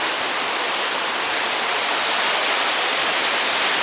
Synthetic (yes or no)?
no